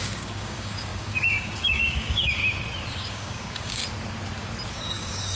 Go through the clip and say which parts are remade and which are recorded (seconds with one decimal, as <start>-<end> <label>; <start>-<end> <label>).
0.0-2.4 remade; 2.4-2.9 recorded; 2.9-3.8 remade; 3.8-4.7 recorded; 4.7-5.3 remade